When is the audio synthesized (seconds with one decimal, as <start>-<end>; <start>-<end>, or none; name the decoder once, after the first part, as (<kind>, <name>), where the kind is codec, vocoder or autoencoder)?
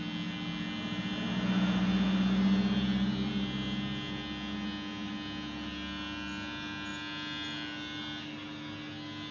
none